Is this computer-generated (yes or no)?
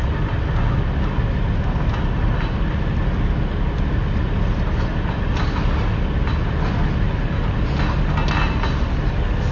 no